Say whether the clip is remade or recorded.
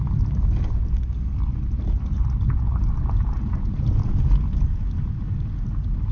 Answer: recorded